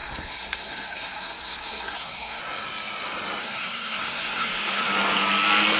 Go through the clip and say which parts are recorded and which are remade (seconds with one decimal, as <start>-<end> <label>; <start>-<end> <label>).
0.0-2.4 remade; 2.4-3.4 recorded; 3.4-4.9 remade; 4.9-5.8 recorded